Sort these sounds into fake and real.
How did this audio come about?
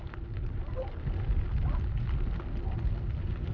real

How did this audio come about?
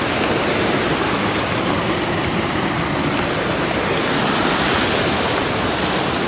real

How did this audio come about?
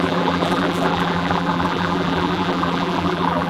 fake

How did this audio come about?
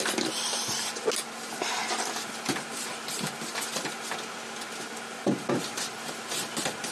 real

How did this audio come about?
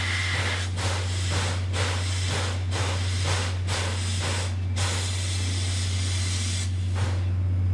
real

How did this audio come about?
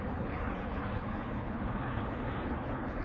fake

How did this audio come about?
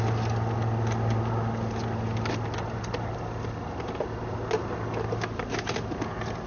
real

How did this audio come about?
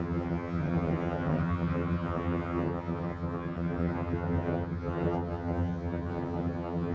fake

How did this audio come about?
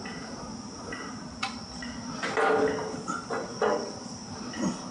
real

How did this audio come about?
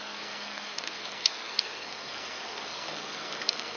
fake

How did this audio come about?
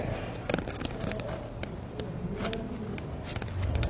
real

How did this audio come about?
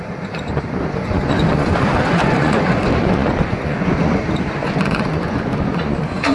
fake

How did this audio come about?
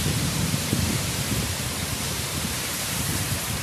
fake